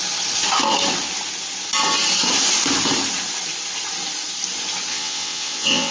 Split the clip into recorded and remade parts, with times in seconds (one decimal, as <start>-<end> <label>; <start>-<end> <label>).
0.0-4.9 recorded; 4.9-5.9 remade